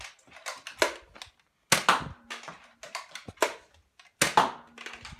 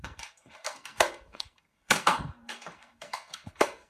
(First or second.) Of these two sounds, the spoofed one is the second